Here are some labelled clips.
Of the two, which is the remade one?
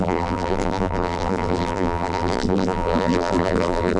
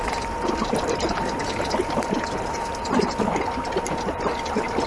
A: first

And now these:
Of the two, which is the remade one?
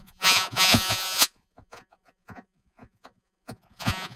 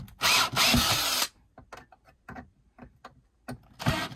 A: first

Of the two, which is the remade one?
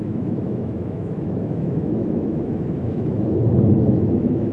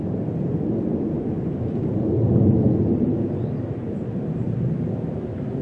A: first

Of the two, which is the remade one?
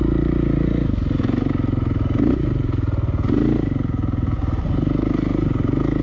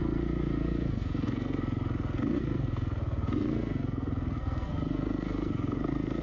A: second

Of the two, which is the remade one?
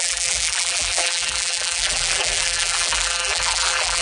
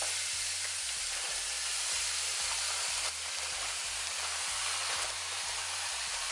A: first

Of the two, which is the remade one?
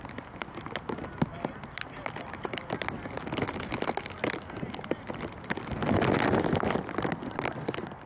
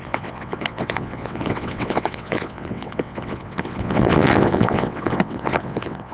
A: second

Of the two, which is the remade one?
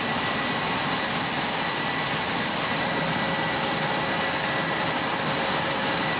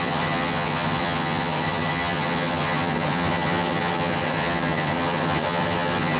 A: second